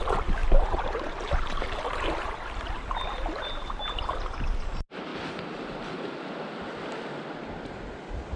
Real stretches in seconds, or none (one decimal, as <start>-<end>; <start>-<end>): 0.0-0.4; 2.6-5.1; 6.0-8.4